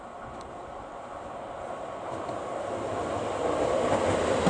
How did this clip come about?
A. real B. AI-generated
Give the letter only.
A